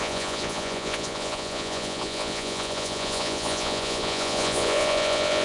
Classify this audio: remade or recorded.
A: remade